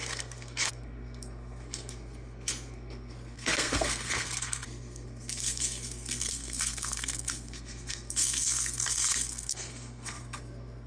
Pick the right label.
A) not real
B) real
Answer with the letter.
A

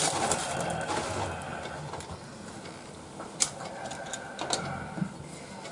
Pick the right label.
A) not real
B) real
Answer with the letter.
B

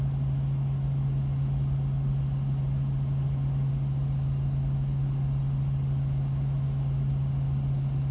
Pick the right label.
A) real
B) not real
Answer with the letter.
A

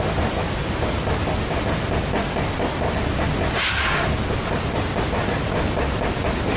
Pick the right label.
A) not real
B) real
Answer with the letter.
B